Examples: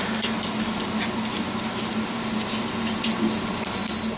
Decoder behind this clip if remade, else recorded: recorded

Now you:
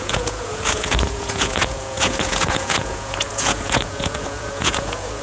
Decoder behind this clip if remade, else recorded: remade, vocoder, Vocos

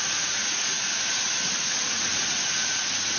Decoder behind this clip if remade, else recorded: remade, vocoder, Vocos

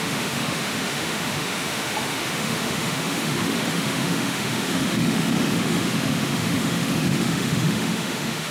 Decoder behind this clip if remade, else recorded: remade, autoencoder, DAC-VAE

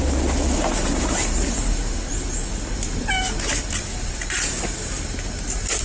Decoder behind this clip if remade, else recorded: recorded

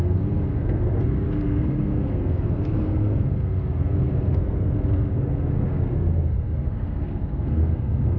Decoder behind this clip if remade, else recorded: remade, codec, SNAC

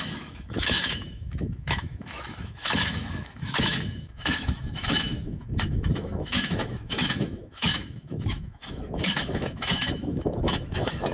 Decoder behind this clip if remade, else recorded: remade, autoencoder, DAC-VAE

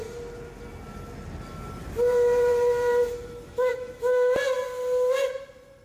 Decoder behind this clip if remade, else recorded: recorded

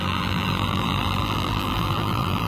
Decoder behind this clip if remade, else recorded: remade, vocoder, BigVGAN v2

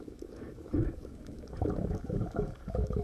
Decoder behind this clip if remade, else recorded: remade, codec, DAC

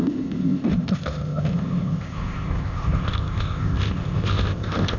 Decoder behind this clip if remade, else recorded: remade, codec, ZipCodec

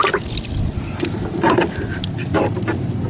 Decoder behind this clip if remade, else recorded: recorded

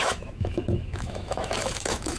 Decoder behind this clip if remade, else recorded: remade, autoencoder, DAC-VAE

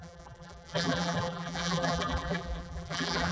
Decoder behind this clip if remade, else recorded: remade, vocoder, BigVGAN v2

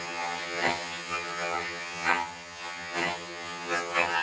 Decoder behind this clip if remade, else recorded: remade, vocoder, HiFi-GAN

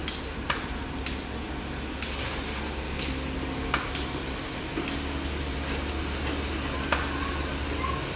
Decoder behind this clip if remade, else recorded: recorded